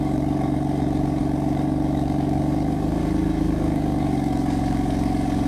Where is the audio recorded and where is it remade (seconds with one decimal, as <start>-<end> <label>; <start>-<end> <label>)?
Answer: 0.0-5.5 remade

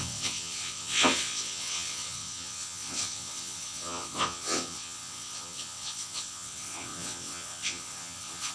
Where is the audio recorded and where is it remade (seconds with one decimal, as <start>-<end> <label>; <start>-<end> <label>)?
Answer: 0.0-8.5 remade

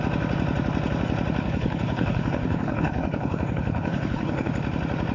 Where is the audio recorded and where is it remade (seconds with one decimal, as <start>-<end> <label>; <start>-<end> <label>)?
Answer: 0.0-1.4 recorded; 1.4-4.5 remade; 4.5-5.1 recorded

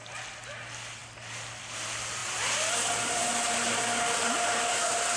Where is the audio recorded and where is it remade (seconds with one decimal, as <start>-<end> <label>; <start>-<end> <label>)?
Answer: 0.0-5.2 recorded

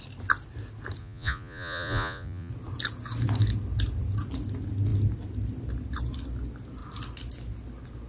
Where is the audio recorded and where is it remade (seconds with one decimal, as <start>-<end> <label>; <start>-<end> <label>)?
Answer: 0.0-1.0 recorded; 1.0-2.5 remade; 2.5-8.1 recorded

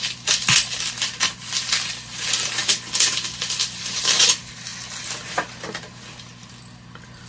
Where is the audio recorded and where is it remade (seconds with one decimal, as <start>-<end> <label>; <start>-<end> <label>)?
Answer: 0.0-7.3 recorded